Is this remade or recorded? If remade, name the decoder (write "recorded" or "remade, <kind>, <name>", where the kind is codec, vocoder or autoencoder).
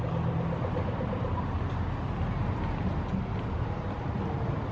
recorded